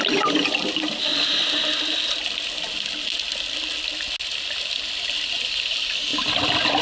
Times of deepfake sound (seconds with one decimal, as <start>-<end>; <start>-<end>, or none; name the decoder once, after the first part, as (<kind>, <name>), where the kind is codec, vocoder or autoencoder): none